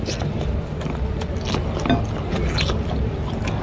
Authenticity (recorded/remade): recorded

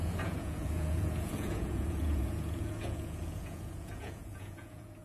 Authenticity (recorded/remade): remade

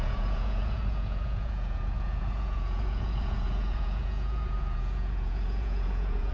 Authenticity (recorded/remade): remade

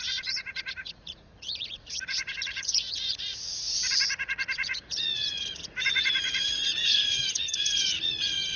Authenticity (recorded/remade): remade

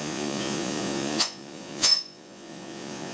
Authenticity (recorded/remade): remade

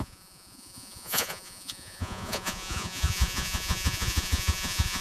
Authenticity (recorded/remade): remade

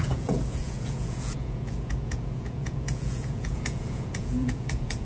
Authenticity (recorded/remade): remade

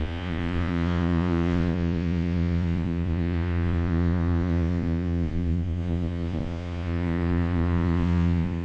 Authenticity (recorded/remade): remade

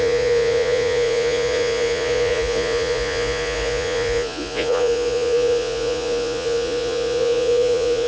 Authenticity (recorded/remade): remade